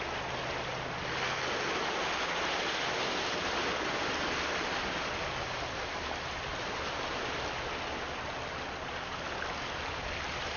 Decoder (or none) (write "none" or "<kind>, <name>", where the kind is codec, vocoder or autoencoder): none